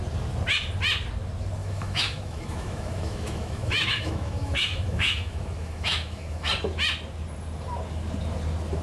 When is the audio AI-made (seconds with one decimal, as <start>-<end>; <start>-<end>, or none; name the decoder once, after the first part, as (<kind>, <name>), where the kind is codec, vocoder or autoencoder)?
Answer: 1.6-6.5 (autoencoder, DAC-VAE)